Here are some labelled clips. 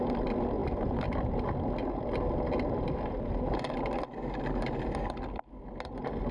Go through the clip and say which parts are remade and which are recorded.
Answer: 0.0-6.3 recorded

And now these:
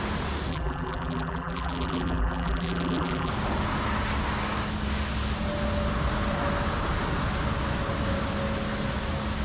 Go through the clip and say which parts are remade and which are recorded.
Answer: 0.0-0.5 recorded; 0.5-3.3 remade; 3.3-9.4 recorded

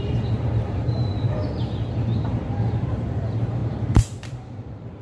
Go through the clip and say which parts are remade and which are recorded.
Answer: 0.0-5.0 remade

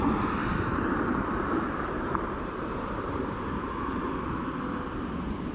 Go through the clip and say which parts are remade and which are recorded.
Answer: 0.0-0.4 recorded; 0.4-3.7 remade; 3.7-5.5 recorded

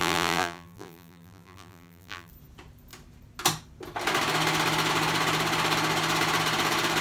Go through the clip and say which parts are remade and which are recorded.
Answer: 0.0-2.3 remade; 2.3-7.0 recorded